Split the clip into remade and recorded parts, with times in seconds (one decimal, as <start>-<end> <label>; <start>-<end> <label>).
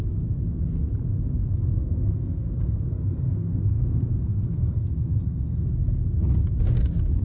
0.0-1.4 recorded; 1.4-5.7 remade; 5.7-7.2 recorded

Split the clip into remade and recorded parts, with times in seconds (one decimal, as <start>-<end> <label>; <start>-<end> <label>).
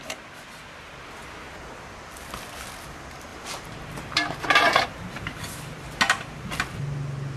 0.0-3.3 recorded; 3.3-4.4 remade; 4.4-7.4 recorded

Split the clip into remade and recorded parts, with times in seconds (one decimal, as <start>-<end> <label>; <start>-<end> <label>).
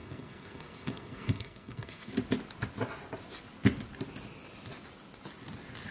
0.0-2.1 remade; 2.1-5.9 recorded